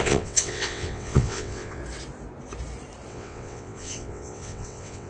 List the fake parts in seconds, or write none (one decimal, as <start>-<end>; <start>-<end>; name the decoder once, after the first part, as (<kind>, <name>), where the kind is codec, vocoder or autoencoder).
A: 0.0-1.8 (vocoder, WaveNeXt); 3.1-5.1